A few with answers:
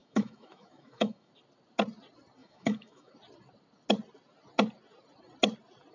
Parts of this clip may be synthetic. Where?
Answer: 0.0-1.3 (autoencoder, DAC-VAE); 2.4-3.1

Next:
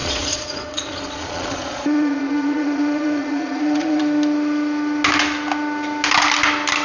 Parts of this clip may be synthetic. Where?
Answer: 0.0-4.0 (vocoder, Vocos)

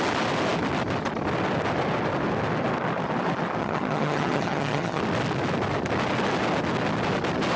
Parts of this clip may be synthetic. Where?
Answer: 3.6-5.0 (vocoder, HiFi-GAN)

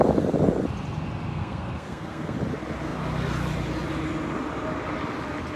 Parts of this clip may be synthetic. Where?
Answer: 1.3-2.4 (codec, SNAC)

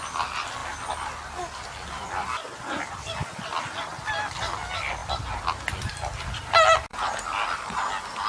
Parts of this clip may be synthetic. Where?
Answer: none

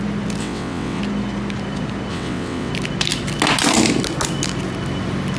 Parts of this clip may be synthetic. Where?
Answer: 0.4-1.0 (vocoder, WaveNeXt); 2.1-2.7